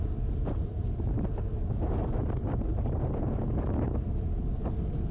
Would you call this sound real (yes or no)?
yes